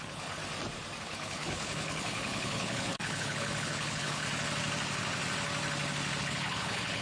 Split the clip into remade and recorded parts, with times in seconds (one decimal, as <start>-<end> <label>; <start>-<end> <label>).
0.0-0.4 remade; 0.4-1.0 recorded; 1.0-4.2 remade; 4.2-6.2 recorded; 6.2-7.0 remade